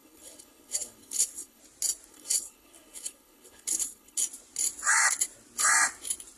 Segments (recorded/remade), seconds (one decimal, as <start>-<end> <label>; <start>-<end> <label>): 0.0-1.6 remade; 1.6-2.1 recorded; 2.1-4.2 remade; 4.2-6.4 recorded